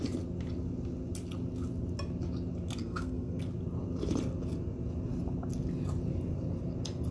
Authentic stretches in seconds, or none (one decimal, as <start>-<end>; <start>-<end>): 0.0-2.8; 3.4-7.1